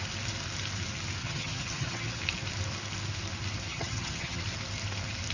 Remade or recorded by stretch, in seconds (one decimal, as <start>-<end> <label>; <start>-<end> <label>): 0.0-1.2 recorded; 1.2-2.2 remade; 2.2-3.7 recorded; 3.7-4.4 remade; 4.4-5.3 recorded